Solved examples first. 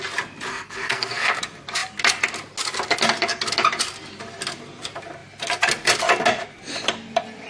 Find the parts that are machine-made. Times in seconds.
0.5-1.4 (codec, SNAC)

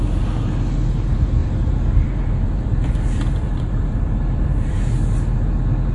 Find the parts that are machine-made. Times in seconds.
1.4-4.9 (vocoder, BigVGAN v2)

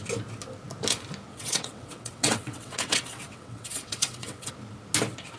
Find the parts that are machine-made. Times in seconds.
1.3-4.5 (vocoder, WaveNeXt)